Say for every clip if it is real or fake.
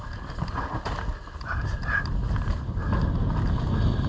real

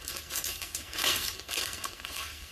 fake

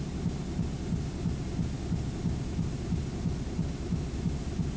real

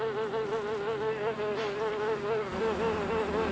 real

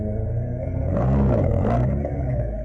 fake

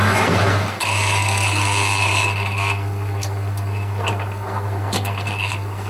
fake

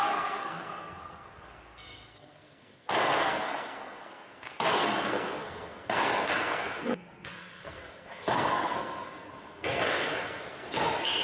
fake